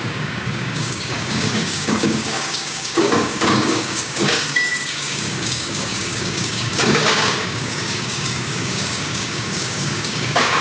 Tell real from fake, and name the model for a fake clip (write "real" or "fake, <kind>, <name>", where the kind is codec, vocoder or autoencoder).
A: fake, codec, DAC